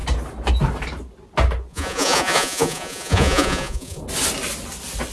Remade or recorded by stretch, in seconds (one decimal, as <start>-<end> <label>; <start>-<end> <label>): 0.0-1.7 recorded; 1.7-4.0 remade; 4.0-5.1 recorded